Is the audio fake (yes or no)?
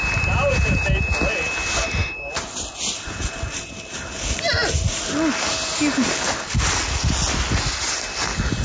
no